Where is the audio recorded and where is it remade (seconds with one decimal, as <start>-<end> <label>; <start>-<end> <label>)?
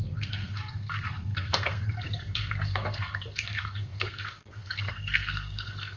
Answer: 0.0-6.0 remade